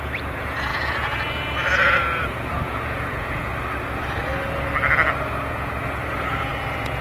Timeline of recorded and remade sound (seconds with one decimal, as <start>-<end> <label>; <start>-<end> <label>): 0.0-3.5 remade; 3.5-5.5 recorded; 5.5-7.0 remade